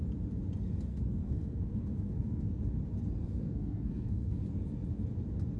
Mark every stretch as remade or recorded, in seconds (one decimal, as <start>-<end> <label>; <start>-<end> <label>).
0.0-0.9 recorded; 0.9-2.6 remade; 2.6-3.2 recorded; 3.2-4.4 remade; 4.4-5.6 recorded